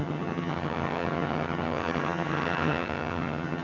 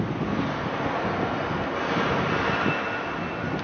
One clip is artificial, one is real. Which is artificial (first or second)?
first